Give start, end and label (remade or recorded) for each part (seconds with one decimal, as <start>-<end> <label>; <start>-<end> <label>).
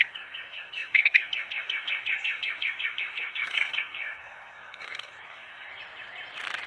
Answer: 0.0-5.7 remade; 5.7-6.7 recorded